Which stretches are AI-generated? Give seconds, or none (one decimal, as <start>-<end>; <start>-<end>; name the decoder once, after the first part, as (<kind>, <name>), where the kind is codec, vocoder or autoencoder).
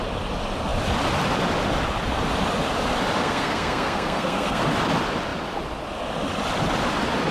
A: 3.2-4.6 (codec, SNAC)